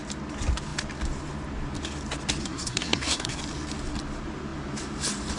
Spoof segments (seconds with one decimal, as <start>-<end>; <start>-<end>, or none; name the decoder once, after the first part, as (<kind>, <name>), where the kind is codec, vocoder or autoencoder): 2.4-3.4 (codec, SNAC)